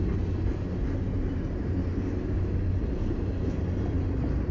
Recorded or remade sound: recorded